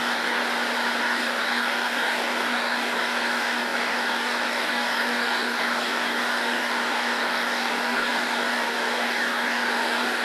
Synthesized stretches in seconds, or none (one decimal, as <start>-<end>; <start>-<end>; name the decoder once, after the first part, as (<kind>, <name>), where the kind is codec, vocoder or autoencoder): 0.0-0.4 (codec, DAC); 1.0-10.2